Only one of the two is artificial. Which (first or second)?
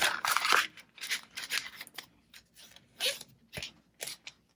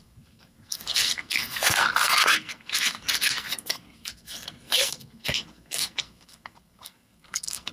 second